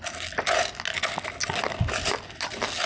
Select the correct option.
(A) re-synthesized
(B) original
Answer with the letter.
B